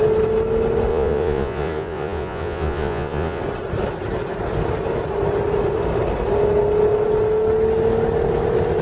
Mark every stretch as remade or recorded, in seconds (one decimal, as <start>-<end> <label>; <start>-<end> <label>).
0.0-0.9 recorded; 0.9-3.4 remade; 3.4-8.8 recorded